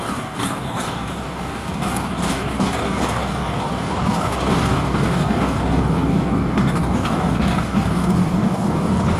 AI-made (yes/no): yes